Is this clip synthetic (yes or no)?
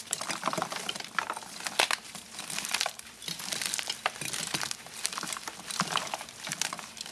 yes